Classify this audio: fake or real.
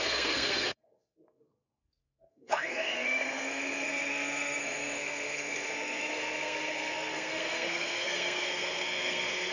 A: fake